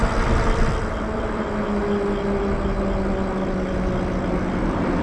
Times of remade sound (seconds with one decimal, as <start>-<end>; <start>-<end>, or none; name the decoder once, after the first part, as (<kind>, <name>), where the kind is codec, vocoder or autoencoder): 0.0-1.8 (vocoder, BigVGAN v2); 4.3-5.0